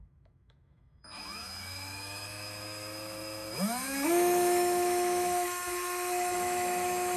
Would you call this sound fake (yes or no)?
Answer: yes